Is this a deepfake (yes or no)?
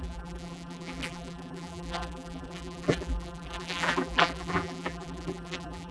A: yes